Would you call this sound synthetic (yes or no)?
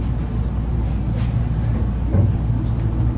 no